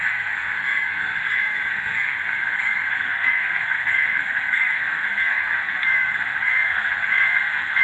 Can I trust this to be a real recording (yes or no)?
no